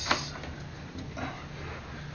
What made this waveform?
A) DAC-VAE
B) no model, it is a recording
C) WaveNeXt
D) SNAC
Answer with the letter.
B